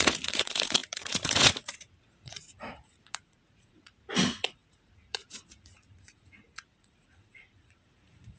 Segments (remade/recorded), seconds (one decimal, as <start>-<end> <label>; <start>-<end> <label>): 0.0-8.4 remade